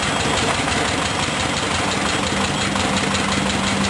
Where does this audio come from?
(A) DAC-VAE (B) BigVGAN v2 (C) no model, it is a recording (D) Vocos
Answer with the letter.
C